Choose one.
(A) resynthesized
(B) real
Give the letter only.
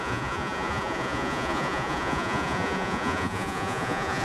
A